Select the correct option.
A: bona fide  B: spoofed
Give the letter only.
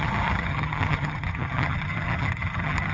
B